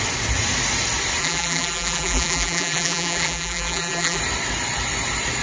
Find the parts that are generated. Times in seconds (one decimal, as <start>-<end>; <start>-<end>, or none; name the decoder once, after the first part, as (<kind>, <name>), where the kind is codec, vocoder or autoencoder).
1.2-4.2 (vocoder, BigVGAN v2)